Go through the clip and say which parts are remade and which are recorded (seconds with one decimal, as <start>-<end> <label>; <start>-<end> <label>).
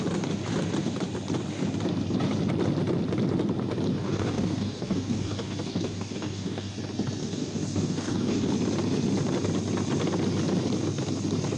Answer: 0.0-4.0 recorded; 4.0-6.7 remade; 6.7-7.2 recorded; 7.2-8.5 remade; 8.5-11.6 recorded